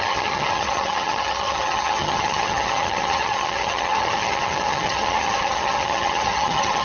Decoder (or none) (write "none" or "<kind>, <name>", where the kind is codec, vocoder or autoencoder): vocoder, HiFi-GAN